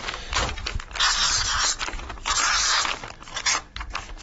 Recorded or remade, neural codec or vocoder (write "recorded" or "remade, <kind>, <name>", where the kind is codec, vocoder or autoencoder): recorded